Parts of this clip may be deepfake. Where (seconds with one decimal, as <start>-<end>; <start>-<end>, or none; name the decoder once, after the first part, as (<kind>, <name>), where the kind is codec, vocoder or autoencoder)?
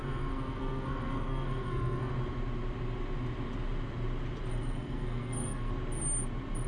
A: 0.0-2.1 (codec, SNAC); 4.5-5.7